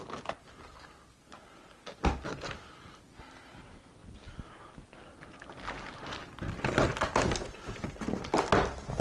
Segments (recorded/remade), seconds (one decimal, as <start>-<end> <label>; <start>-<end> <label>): 0.0-9.0 recorded

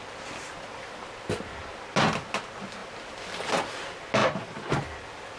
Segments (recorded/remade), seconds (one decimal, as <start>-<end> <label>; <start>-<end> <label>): 0.0-5.4 recorded

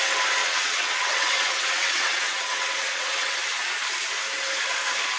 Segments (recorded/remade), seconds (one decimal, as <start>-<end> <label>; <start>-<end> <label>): 0.0-0.4 recorded; 0.4-3.4 remade; 3.4-5.2 recorded

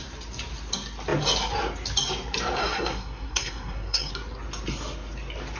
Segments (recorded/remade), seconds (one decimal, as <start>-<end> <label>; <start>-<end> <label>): 0.0-2.6 recorded; 2.6-4.1 remade; 4.1-5.6 recorded

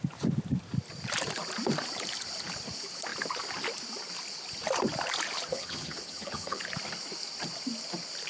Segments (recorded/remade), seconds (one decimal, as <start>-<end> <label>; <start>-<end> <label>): 0.0-5.5 recorded; 5.5-6.6 remade; 6.6-8.3 recorded

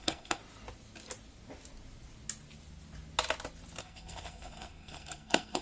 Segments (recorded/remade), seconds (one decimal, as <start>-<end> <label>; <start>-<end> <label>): 0.0-0.4 remade; 0.4-3.8 recorded; 3.8-5.6 remade